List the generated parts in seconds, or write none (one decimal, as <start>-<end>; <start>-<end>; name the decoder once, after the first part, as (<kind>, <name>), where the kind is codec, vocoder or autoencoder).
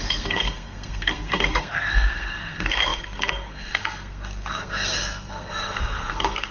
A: 0.0-6.5 (codec, SNAC)